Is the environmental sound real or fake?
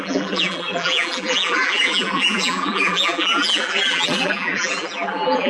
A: fake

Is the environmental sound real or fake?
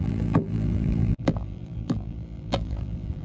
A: fake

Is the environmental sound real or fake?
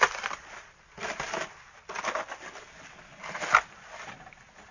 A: fake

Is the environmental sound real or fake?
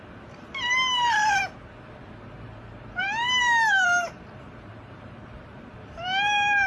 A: fake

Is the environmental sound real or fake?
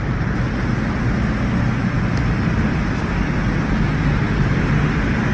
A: real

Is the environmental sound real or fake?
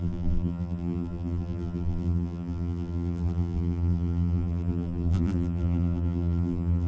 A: fake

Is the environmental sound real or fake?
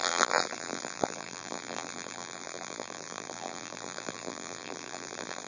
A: fake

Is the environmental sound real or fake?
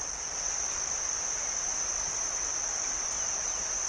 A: fake